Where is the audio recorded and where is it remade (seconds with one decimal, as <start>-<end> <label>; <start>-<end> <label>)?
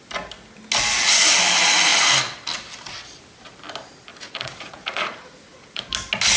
0.0-4.1 recorded; 4.1-5.9 remade; 5.9-6.4 recorded